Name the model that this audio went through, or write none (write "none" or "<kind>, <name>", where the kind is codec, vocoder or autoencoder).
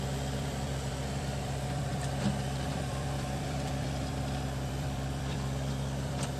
vocoder, BigVGAN v2